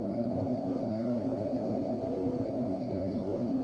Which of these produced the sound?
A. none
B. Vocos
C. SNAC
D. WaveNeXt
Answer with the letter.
C